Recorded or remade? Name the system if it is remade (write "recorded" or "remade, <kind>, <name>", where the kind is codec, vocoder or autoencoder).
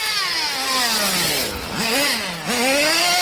recorded